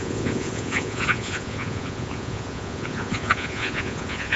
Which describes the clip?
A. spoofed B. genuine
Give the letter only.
A